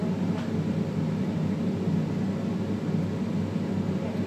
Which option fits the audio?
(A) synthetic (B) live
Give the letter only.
B